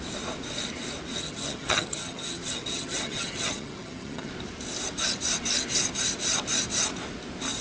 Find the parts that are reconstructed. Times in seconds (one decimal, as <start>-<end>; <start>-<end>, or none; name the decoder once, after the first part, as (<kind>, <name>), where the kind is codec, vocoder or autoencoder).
1.2-4.3 (vocoder, HiFi-GAN)